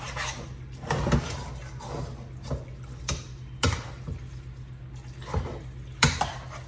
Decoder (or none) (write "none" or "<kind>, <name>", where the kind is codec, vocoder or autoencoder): none